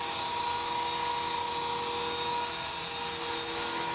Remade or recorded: recorded